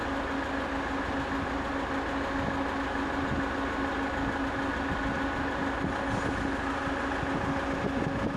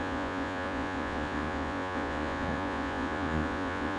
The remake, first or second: second